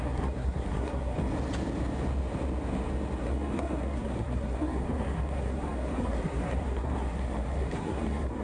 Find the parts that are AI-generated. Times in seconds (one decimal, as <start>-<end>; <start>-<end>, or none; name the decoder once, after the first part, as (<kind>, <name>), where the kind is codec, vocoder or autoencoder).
0.0-1.2 (codec, SNAC); 3.2-8.4